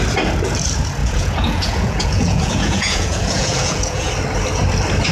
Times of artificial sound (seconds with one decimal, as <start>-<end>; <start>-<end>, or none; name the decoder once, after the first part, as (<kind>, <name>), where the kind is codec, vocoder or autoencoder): 1.0-4.1 (vocoder, Vocos)